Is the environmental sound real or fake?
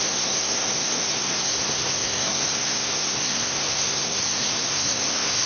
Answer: fake